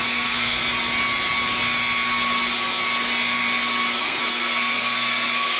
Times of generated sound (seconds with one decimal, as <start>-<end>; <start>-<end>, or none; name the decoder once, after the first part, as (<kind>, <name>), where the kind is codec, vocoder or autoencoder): 0.0-0.6 (codec, SNAC); 4.0-5.6